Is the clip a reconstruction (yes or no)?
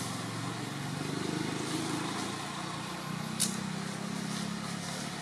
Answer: no